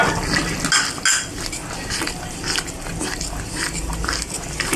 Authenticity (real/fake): real